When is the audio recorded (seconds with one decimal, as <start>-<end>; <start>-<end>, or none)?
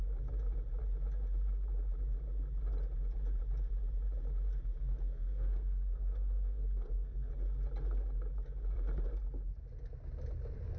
0.0-4.9; 7.3-10.8